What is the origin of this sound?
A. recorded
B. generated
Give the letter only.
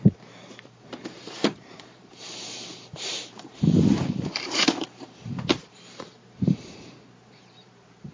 B